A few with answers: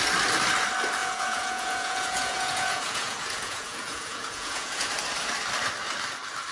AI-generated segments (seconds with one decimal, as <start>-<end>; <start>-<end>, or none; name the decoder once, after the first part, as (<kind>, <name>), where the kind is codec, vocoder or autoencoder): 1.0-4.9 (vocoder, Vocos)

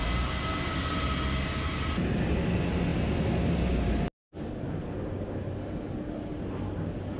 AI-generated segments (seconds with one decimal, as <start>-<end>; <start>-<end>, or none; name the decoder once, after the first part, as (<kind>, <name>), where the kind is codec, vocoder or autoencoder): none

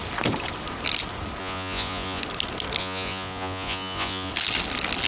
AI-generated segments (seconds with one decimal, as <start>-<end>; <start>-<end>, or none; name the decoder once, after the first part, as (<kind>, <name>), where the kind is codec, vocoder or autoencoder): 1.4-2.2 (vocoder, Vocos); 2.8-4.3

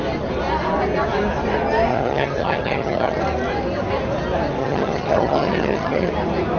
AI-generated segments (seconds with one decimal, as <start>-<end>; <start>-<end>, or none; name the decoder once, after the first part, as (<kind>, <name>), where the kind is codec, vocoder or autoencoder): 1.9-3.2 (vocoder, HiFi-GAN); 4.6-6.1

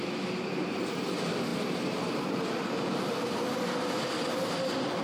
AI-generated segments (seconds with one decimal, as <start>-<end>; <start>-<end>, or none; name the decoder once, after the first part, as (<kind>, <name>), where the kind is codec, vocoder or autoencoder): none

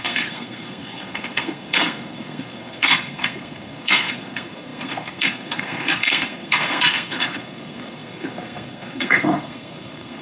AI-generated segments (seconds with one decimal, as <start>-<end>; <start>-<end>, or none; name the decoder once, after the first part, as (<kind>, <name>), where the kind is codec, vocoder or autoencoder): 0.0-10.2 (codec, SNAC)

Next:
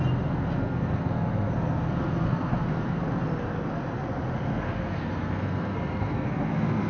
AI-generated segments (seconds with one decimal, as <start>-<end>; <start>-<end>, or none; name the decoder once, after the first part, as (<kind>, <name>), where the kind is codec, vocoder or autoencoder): 0.6-3.0 (codec, SNAC); 4.5-6.9